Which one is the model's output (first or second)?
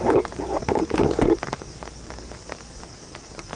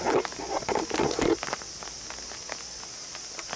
first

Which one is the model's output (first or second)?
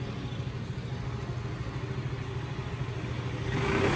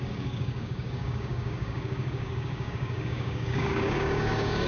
second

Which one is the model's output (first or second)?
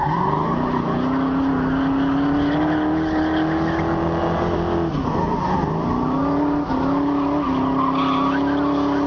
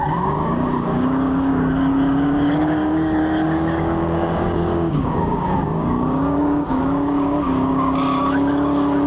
second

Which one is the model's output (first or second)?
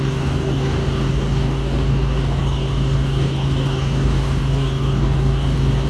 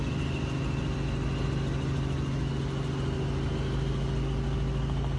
first